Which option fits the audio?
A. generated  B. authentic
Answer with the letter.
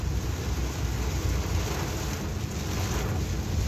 B